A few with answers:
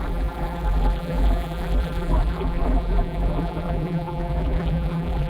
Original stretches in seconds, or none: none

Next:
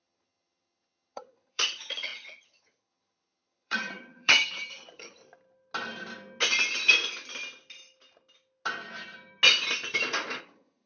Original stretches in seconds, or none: 5.2-10.4